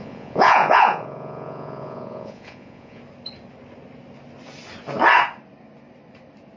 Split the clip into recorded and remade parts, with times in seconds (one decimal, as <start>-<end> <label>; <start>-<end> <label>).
0.0-3.0 remade; 3.0-6.6 recorded